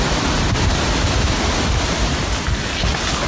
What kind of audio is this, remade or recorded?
recorded